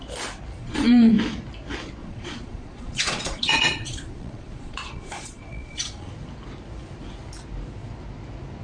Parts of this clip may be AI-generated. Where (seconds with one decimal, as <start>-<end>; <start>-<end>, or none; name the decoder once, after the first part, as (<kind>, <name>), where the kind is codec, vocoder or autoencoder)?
0.6-1.1 (vocoder, Vocos); 2.0-6.1